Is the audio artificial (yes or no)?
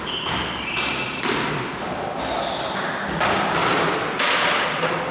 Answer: no